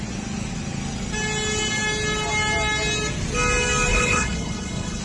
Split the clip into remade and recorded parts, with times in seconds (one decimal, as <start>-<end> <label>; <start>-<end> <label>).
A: 0.0-3.9 recorded; 3.9-5.0 remade